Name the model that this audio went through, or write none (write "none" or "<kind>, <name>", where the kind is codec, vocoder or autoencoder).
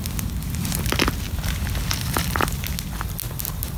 none